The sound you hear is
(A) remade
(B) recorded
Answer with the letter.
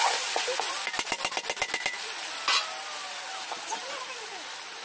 B